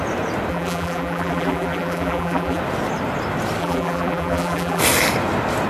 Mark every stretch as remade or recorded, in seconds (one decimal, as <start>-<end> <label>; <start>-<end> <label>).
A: 0.0-0.5 recorded; 0.5-2.6 remade; 2.6-3.6 recorded; 3.6-4.8 remade; 4.8-5.7 recorded